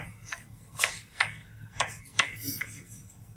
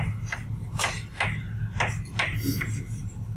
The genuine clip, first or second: second